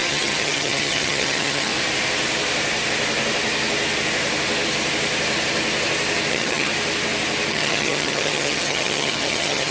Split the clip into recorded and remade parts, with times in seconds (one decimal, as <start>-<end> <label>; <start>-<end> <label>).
0.0-1.7 remade; 1.7-6.3 recorded; 6.3-6.7 remade; 6.7-7.5 recorded; 7.5-9.7 remade